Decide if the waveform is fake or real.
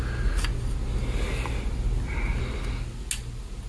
real